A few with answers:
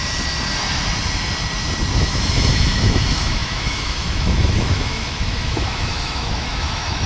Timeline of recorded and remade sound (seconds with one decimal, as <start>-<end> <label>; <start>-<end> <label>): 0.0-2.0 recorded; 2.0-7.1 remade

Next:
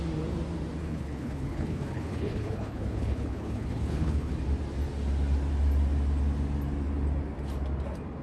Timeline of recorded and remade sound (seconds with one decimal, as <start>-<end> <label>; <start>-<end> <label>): 0.0-0.8 recorded; 0.8-4.3 remade; 4.3-8.2 recorded

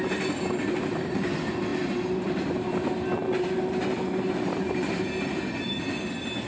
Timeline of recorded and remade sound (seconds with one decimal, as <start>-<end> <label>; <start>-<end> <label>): 0.0-6.5 recorded

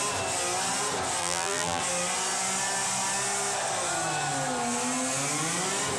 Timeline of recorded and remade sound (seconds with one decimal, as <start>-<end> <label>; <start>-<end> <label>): 0.0-1.2 recorded; 1.2-1.8 remade; 1.8-6.0 recorded

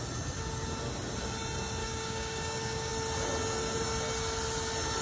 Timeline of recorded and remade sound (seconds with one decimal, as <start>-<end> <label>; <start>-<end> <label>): 0.0-1.8 recorded; 1.8-2.9 remade; 2.9-5.0 recorded